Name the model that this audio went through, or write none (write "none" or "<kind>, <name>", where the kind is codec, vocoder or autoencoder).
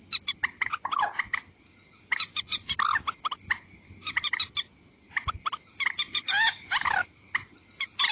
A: none